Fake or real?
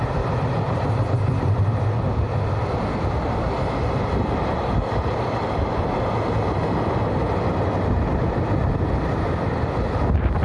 real